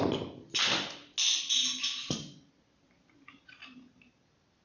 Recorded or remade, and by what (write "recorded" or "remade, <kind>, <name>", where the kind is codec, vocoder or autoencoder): recorded